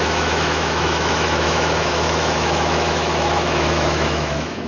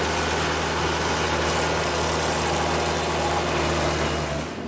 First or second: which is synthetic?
first